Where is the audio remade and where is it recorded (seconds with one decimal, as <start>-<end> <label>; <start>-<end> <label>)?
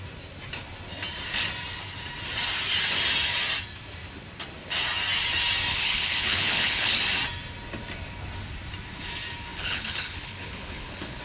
0.0-5.7 recorded; 5.7-7.0 remade; 7.0-9.5 recorded; 9.5-11.2 remade